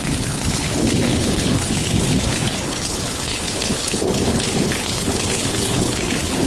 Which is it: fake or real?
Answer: fake